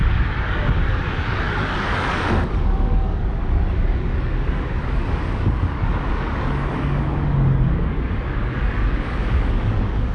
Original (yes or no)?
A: no